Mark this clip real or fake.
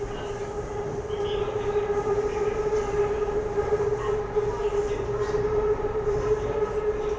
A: real